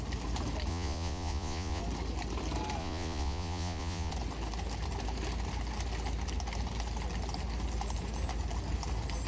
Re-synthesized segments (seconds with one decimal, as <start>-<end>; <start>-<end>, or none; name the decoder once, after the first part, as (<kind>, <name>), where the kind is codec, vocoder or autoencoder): 0.7-1.8 (vocoder, Vocos); 2.8-4.1